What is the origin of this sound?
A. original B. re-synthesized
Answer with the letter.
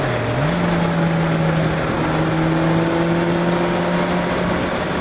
A